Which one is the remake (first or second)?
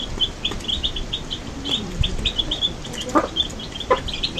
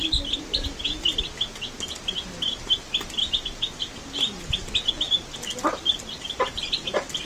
first